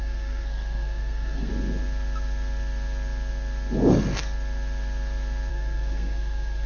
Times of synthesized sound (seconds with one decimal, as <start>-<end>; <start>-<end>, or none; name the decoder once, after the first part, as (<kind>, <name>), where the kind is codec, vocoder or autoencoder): 0.0-1.5 (codec, SNAC); 5.5-6.7